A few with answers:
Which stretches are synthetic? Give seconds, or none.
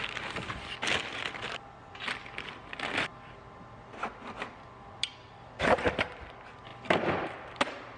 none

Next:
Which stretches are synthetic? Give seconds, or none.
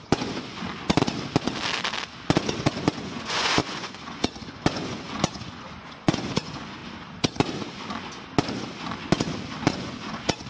0.0-0.6 (vocoder, Vocos); 2.6-6.8; 9.7-10.5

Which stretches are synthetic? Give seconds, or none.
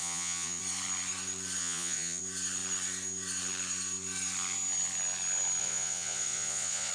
0.0-0.6 (vocoder, Vocos); 1.6-2.2; 5.6-6.9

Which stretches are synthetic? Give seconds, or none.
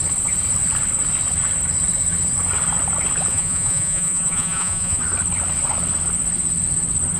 3.3-5.0 (vocoder, Vocos)